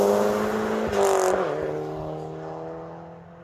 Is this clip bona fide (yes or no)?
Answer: yes